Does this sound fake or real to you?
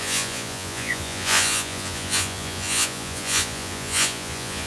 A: fake